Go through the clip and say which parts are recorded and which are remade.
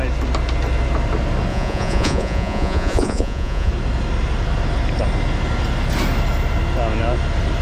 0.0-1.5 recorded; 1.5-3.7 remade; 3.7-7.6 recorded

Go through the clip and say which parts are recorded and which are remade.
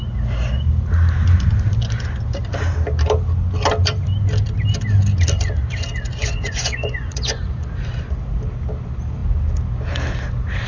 0.0-6.2 recorded; 6.2-7.4 remade; 7.4-10.7 recorded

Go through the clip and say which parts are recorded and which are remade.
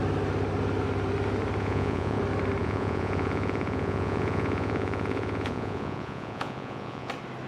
0.0-1.6 recorded; 1.6-2.2 remade; 2.2-2.6 recorded; 2.6-7.1 remade; 7.1-7.5 recorded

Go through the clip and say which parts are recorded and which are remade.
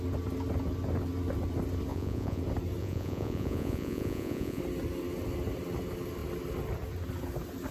0.0-1.9 recorded; 1.9-2.4 remade; 2.4-2.8 recorded; 2.8-4.6 remade; 4.6-7.7 recorded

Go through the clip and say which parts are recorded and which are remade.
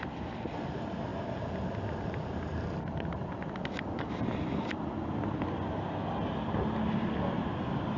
0.0-8.0 recorded